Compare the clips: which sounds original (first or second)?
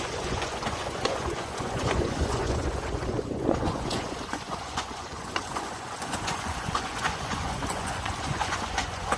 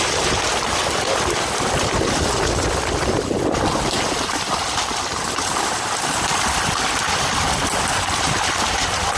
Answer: second